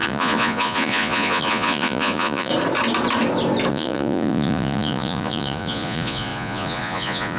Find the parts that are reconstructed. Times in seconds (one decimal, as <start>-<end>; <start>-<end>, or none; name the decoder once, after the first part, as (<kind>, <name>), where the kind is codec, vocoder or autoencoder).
0.0-2.5 (vocoder, Vocos); 3.7-7.4